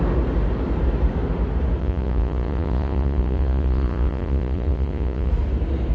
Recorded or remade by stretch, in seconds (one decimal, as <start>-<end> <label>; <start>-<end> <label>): 0.0-1.8 recorded; 1.8-5.3 remade; 5.3-5.9 recorded

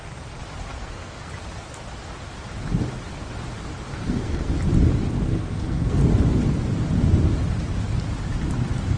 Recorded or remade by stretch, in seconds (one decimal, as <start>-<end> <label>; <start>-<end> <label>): 0.0-0.7 recorded; 0.7-1.3 remade; 1.3-3.9 recorded; 3.9-4.5 remade; 4.5-5.3 recorded; 5.3-6.0 remade; 6.0-9.0 recorded

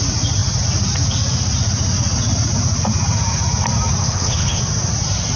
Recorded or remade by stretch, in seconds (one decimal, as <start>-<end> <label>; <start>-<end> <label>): 0.0-4.0 recorded; 4.0-4.6 remade; 4.6-5.4 recorded

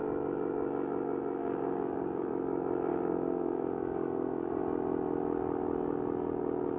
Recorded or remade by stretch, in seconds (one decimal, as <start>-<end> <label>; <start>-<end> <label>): 0.0-1.4 recorded; 1.4-2.3 remade; 2.3-2.9 recorded; 2.9-4.6 remade; 4.6-6.8 recorded

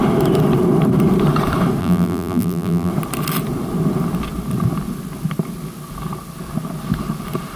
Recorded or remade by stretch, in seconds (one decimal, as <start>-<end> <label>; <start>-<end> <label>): 0.0-1.8 recorded; 1.8-2.9 remade; 2.9-7.6 recorded

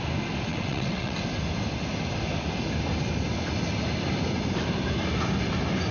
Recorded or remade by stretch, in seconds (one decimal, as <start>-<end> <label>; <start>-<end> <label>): 0.0-0.5 recorded; 0.5-1.2 remade; 1.2-5.9 recorded

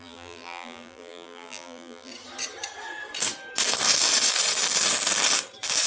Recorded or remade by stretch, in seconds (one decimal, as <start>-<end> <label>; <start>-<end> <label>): 0.0-2.1 remade; 2.1-5.9 recorded